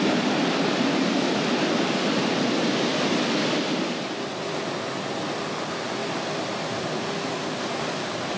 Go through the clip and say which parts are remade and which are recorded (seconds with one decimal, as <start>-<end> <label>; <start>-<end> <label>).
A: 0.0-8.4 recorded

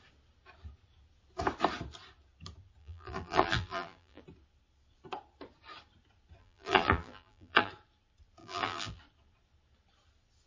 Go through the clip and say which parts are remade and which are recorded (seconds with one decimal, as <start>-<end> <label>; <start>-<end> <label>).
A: 0.0-2.8 recorded; 2.8-4.2 remade; 4.2-6.4 recorded; 6.4-7.7 remade; 7.7-8.4 recorded; 8.4-9.0 remade; 9.0-10.5 recorded

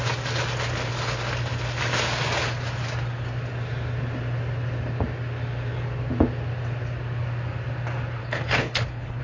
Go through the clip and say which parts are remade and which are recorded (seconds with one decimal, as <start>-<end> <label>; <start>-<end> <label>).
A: 0.0-8.2 recorded; 8.2-9.2 remade

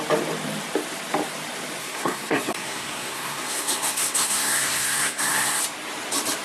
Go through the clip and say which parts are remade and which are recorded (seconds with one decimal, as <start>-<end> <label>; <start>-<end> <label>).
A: 0.0-1.8 recorded; 1.8-5.6 remade; 5.6-6.4 recorded

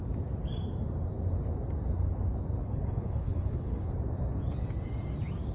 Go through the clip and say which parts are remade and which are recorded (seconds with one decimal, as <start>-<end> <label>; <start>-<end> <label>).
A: 0.0-2.6 recorded; 2.6-3.9 remade; 3.9-5.5 recorded

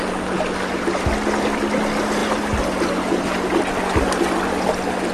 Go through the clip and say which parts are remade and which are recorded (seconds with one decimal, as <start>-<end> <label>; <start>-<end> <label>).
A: 0.0-5.1 recorded

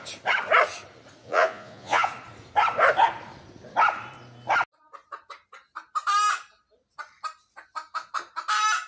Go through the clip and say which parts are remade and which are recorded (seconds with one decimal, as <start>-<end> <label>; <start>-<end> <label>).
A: 0.0-1.2 recorded; 1.2-2.1 remade; 2.1-8.9 recorded